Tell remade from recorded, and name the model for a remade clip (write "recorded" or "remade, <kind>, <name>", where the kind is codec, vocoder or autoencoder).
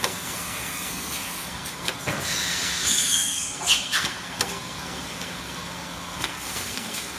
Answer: remade, codec, SNAC